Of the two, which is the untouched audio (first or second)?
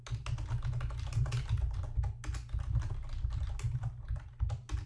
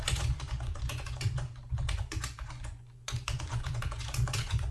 first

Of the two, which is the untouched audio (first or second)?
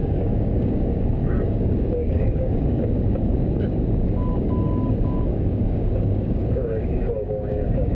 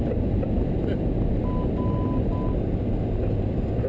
second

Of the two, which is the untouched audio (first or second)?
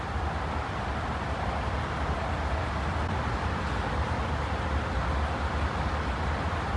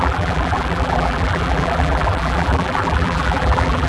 first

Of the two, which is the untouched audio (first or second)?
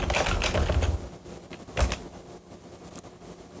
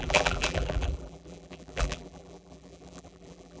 first